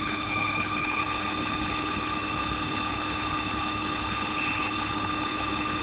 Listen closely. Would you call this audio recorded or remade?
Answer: remade